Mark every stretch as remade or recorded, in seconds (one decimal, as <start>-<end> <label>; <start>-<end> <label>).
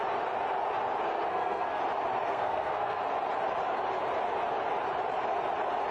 0.0-1.3 recorded; 1.3-1.8 remade; 1.8-2.3 recorded; 2.3-3.0 remade; 3.0-5.9 recorded